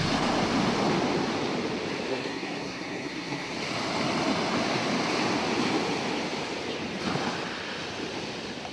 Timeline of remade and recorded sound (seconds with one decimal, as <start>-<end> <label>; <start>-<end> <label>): 0.0-2.1 recorded; 2.1-3.5 remade; 3.5-8.7 recorded